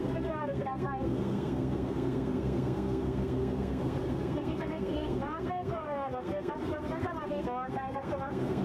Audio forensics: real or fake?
fake